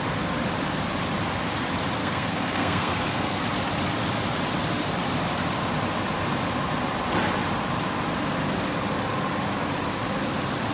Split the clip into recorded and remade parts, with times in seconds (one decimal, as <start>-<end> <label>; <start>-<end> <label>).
0.0-2.0 recorded; 2.0-3.4 remade; 3.4-10.7 recorded